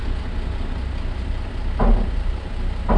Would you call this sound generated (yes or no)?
no